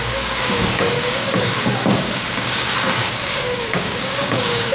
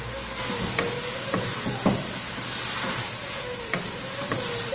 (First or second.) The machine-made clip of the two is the first